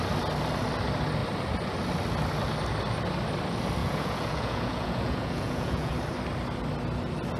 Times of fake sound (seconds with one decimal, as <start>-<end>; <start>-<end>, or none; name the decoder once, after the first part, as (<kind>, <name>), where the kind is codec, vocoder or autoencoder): 3.8-5.9 (vocoder, Vocos)